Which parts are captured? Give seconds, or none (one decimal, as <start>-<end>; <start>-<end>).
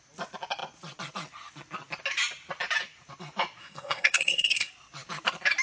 0.0-3.6; 4.7-5.6